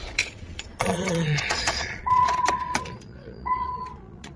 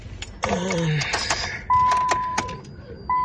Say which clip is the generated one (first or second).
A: first